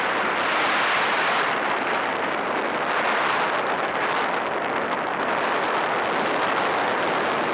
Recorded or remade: recorded